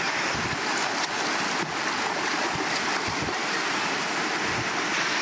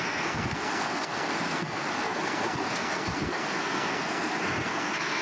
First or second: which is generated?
second